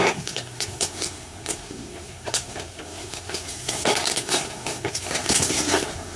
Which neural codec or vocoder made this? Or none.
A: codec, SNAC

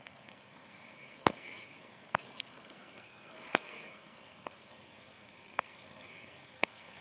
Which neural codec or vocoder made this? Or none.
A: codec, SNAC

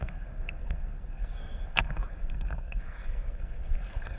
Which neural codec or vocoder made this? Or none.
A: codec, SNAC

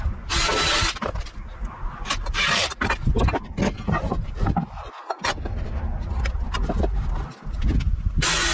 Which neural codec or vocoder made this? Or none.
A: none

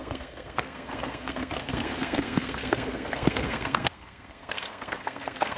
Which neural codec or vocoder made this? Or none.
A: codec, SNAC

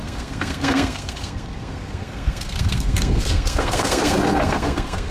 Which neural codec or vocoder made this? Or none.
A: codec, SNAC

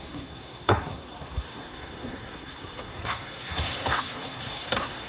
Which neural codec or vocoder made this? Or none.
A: codec, SNAC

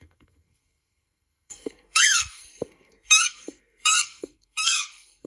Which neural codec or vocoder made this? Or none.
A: codec, SNAC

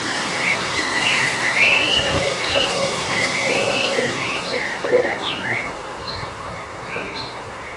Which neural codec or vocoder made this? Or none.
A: codec, SNAC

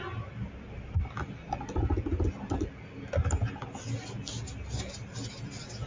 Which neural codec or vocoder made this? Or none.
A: none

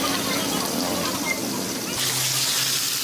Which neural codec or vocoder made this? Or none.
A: none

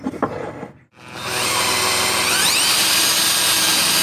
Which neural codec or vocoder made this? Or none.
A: none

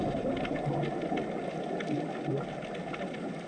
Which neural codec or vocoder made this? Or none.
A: none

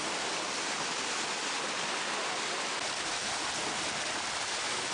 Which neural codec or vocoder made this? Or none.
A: none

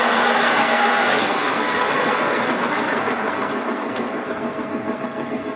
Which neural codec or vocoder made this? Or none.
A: codec, SNAC